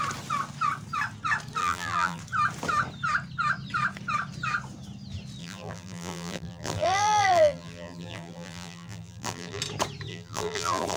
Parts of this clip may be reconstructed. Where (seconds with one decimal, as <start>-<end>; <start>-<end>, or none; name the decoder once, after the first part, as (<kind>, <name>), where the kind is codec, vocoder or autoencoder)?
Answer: 1.6-2.2 (vocoder, BigVGAN v2); 5.4-9.6; 10.1-11.0